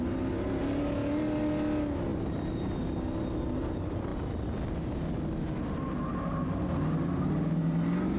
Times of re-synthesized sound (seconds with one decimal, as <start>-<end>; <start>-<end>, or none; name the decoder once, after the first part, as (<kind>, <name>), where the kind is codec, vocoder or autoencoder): 2.1-2.9 (vocoder, BigVGAN v2); 4.1-4.7

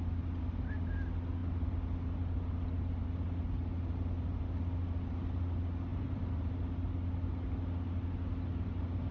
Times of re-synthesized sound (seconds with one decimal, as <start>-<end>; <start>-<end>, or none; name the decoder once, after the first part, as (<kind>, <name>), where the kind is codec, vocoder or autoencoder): 5.9-6.5 (vocoder, BigVGAN v2)

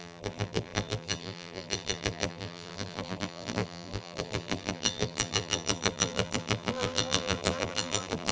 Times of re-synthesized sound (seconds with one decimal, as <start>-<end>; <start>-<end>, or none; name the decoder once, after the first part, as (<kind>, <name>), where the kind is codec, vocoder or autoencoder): 0.0-8.3 (vocoder, BigVGAN v2)

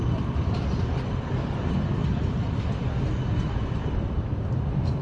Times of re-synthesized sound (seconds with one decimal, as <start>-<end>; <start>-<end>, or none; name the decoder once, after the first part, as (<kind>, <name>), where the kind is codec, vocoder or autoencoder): 0.0-2.0 (vocoder, BigVGAN v2); 3.4-5.0

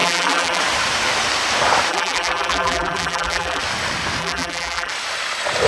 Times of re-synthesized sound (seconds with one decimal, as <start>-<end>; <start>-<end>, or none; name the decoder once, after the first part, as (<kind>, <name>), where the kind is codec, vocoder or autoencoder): 0.0-0.6 (vocoder, BigVGAN v2); 1.9-3.6; 4.2-4.9

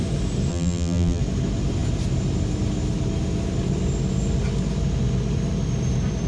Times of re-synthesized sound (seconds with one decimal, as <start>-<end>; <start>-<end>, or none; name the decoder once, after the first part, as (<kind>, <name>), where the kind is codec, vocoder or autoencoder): 0.5-1.2 (vocoder, BigVGAN v2)